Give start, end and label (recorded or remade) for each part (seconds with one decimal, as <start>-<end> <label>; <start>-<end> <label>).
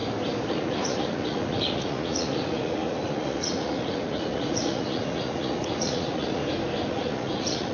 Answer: 0.0-0.5 recorded; 0.5-6.4 remade; 6.4-6.9 recorded; 6.9-7.7 remade